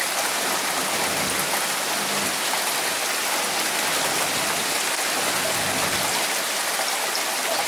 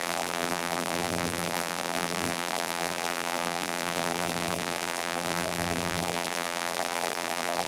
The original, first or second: first